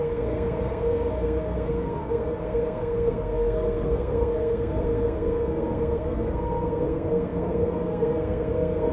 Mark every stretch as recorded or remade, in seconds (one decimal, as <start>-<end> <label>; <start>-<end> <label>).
0.0-8.9 remade